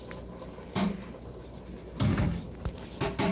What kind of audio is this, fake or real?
real